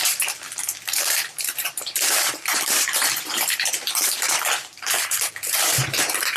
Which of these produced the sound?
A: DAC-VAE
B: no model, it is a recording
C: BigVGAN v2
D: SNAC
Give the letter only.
C